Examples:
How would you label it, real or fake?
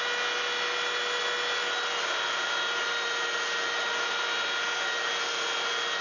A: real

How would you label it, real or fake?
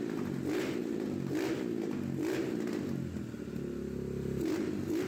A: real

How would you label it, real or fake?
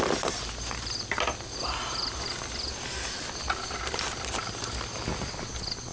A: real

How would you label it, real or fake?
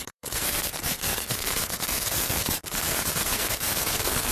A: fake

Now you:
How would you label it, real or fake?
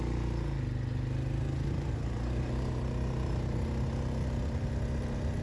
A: real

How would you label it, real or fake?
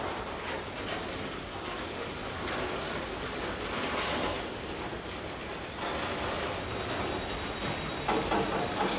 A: real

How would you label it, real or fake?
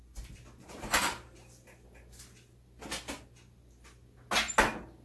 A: real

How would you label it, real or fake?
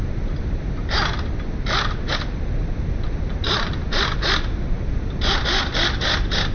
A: real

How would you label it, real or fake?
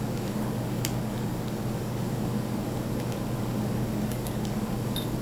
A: fake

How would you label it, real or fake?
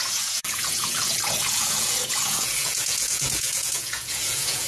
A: fake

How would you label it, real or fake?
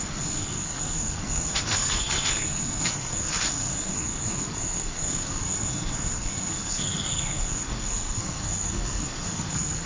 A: fake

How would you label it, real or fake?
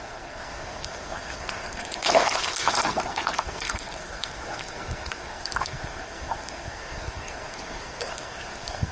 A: fake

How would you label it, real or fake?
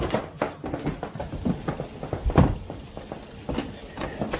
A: real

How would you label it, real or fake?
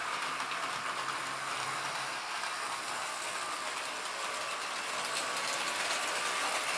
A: real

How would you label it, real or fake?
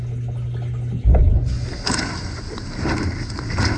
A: real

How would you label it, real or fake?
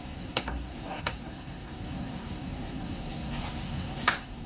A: fake